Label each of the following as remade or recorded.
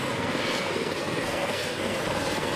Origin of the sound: remade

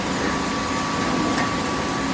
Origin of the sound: recorded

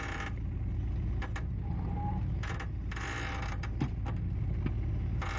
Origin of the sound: recorded